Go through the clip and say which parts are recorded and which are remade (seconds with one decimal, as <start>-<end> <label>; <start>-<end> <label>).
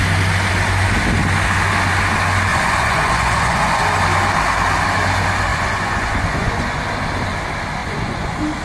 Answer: 0.0-2.5 recorded; 2.5-3.8 remade; 3.8-5.5 recorded; 5.5-6.8 remade; 6.8-7.8 recorded; 7.8-8.6 remade